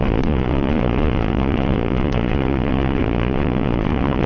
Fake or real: fake